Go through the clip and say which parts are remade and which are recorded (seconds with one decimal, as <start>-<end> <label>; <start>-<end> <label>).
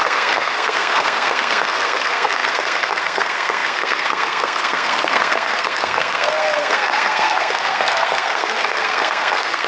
0.0-9.7 remade